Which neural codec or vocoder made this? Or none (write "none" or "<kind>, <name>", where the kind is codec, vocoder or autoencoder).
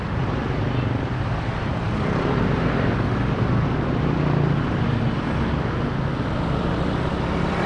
none